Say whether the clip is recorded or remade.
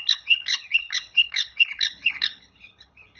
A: remade